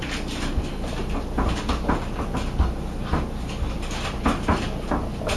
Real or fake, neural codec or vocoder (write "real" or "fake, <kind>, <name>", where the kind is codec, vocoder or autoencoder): real